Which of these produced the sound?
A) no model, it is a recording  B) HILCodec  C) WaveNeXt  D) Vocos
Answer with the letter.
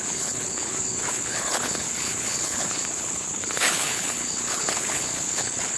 B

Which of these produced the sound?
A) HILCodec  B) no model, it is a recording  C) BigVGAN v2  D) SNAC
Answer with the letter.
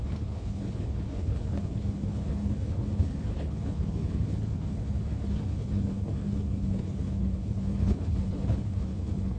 A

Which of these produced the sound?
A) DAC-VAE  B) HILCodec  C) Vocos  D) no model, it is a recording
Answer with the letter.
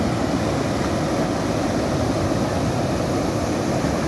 D